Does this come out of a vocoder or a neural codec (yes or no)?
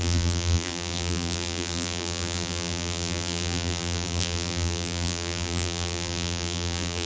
yes